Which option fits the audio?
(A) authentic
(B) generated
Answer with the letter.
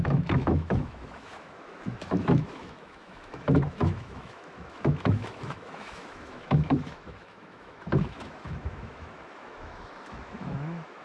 B